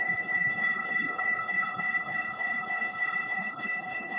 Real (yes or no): no